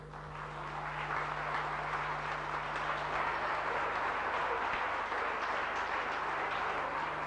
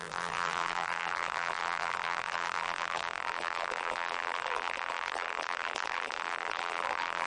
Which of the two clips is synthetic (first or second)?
second